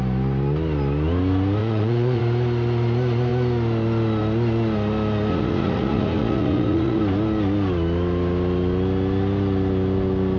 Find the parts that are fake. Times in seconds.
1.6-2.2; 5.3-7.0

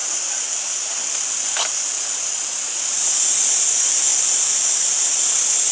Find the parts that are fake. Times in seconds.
2.1-4.1; 4.9-5.7